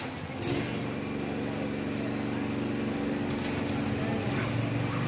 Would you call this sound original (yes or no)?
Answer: yes